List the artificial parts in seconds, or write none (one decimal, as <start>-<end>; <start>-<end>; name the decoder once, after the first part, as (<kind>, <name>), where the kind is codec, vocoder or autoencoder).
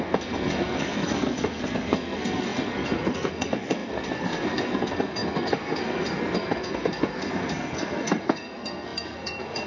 0.0-9.7 (codec, SNAC)